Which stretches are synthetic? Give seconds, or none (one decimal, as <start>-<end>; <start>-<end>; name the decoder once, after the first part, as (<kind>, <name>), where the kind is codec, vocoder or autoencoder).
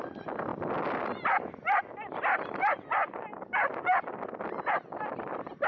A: none